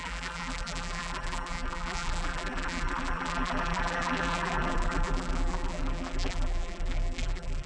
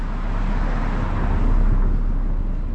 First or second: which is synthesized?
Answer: first